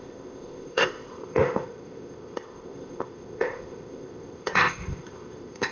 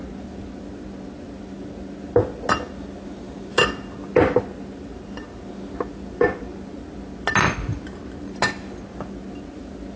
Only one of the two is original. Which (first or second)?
second